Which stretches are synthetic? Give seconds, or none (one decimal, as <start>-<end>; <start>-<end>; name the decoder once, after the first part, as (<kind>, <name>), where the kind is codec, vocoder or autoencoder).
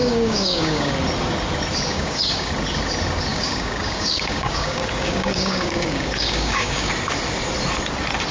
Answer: 0.0-0.9 (codec, DAC); 1.9-2.5; 3.3-6.9